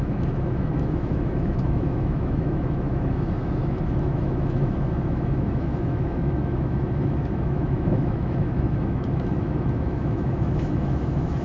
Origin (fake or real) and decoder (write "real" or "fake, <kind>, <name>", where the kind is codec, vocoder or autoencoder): fake, autoencoder, DAC-VAE